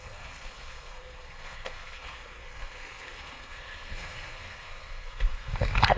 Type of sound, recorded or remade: remade